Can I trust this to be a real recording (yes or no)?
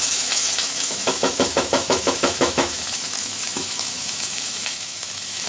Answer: no